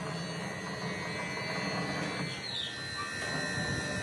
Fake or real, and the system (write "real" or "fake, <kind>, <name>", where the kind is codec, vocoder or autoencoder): real